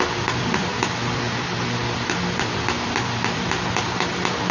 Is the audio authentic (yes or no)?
yes